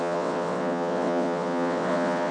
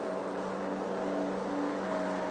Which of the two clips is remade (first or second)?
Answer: first